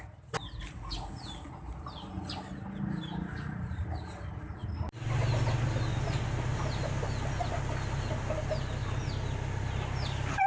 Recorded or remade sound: recorded